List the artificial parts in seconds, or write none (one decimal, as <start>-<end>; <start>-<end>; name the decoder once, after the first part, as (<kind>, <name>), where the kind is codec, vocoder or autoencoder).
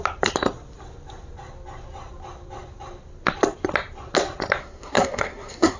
4.6-5.8 (codec, SNAC)